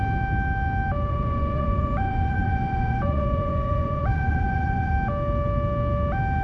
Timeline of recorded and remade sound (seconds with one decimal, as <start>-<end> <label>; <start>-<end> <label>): 0.0-1.1 recorded; 1.1-4.9 remade; 4.9-6.4 recorded